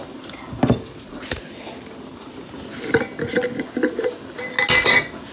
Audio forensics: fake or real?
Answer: real